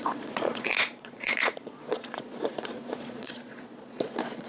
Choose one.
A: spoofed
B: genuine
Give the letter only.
A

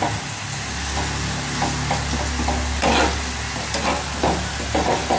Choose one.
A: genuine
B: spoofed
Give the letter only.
A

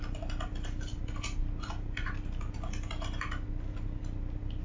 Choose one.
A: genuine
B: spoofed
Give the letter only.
A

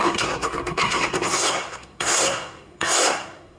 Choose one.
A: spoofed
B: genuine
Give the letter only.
A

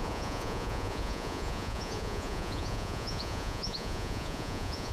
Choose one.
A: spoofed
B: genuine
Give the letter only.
A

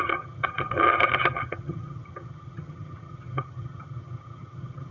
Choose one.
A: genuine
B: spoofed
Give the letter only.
B